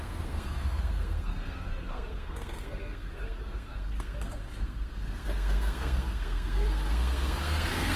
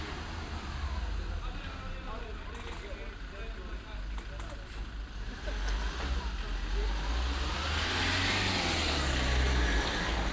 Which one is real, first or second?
second